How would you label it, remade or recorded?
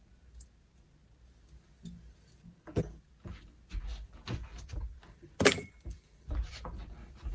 recorded